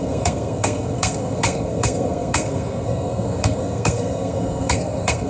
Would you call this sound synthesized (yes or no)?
yes